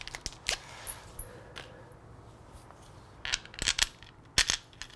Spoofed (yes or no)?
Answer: no